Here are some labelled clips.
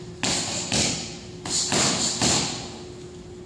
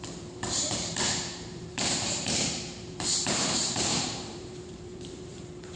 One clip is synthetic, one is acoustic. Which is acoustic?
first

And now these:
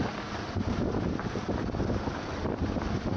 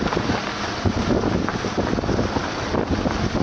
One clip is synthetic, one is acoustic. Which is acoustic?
second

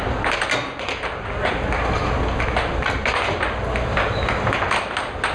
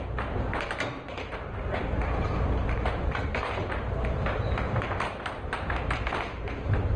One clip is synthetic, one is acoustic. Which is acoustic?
first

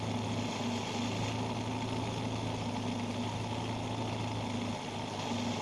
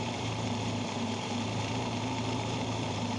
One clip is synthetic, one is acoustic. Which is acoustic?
first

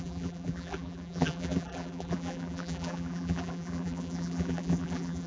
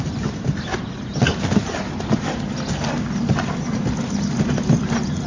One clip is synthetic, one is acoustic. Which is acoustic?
second